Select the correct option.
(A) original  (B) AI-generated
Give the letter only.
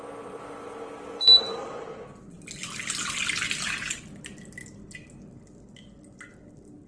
A